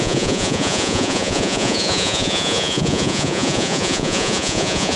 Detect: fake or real fake